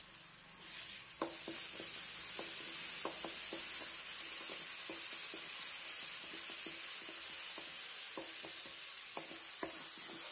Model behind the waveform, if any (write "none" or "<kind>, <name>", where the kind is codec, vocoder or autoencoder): none